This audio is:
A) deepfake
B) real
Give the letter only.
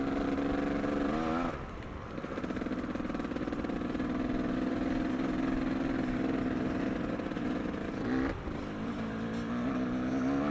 B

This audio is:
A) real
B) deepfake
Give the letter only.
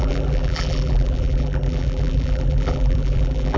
B